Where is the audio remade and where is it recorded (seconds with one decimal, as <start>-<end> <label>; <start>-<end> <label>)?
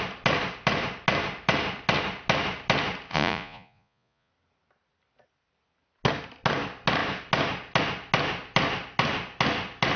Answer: 0.0-3.1 recorded; 3.1-4.3 remade; 4.3-10.0 recorded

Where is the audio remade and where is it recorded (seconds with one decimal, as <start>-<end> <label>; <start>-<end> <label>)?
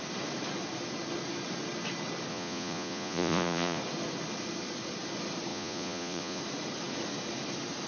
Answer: 0.0-2.3 recorded; 2.3-3.8 remade; 3.8-5.5 recorded; 5.5-6.4 remade; 6.4-7.9 recorded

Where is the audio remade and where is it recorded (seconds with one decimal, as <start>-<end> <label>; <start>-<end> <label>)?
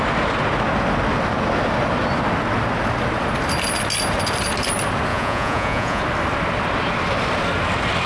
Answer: 0.0-5.1 recorded; 5.1-6.0 remade; 6.0-8.1 recorded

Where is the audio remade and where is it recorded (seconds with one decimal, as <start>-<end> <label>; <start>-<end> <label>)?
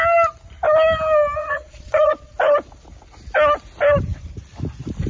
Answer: 0.0-1.4 recorded; 1.4-2.3 remade; 2.3-5.1 recorded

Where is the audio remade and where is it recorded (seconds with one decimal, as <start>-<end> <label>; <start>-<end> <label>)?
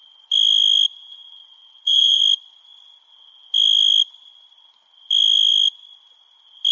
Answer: 0.0-0.9 recorded; 0.9-2.2 remade; 2.2-6.7 recorded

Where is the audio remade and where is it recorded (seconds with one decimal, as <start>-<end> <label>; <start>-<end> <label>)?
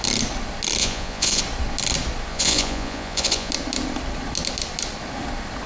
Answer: 0.0-0.8 recorded; 0.8-1.4 remade; 1.4-2.3 recorded; 2.3-3.5 remade; 3.5-5.7 recorded